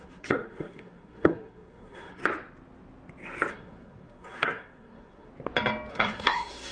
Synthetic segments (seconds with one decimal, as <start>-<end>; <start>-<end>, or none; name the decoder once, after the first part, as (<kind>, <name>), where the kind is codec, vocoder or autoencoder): 0.0-2.2 (codec, SNAC); 3.5-5.3; 5.9-6.7